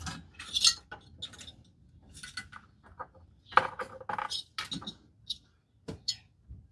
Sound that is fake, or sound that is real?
real